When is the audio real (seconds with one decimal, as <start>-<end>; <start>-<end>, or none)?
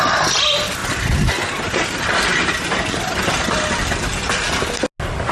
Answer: 0.0-5.3